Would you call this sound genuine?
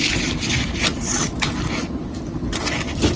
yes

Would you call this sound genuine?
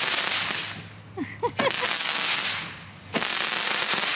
yes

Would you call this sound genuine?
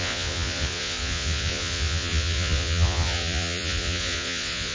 no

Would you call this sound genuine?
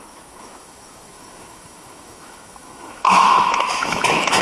no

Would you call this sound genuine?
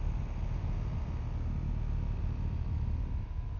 yes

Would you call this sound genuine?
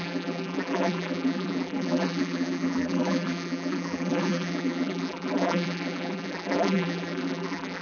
no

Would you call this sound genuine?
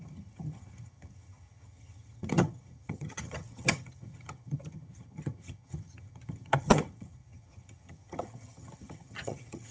no